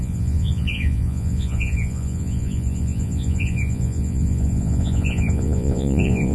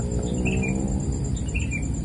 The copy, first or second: first